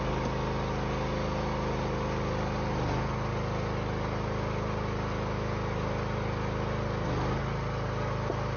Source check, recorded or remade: recorded